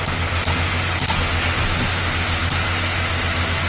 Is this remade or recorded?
recorded